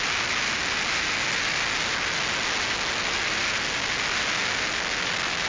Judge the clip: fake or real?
real